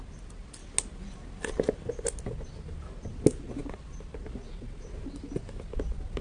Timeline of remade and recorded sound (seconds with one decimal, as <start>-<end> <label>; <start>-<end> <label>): 0.0-6.2 recorded